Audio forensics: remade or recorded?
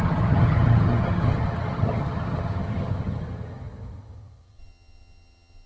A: remade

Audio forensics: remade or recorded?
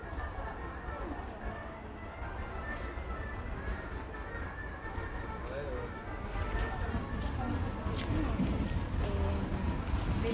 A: recorded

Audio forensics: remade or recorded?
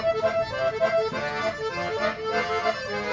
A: recorded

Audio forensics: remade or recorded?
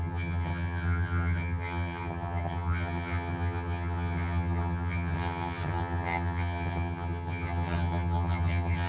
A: remade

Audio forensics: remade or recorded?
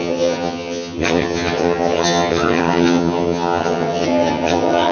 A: remade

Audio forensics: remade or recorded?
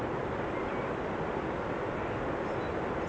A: recorded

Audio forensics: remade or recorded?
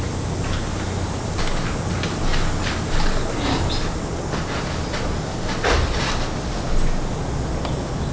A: recorded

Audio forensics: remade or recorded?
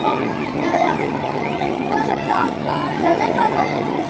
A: remade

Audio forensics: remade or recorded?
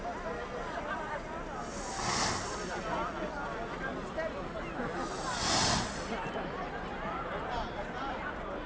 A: recorded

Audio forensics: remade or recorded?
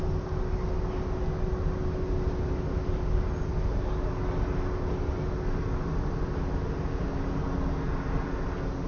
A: recorded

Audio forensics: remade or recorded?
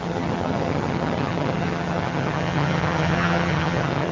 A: remade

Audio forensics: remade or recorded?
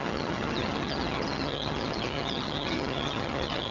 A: remade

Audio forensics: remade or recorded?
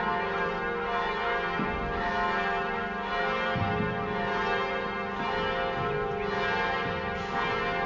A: recorded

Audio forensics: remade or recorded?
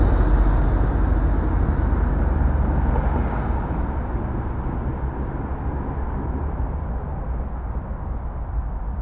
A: recorded